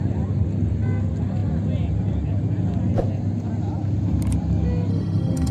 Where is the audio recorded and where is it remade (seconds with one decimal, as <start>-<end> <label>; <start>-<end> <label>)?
0.0-4.9 recorded; 4.9-5.5 remade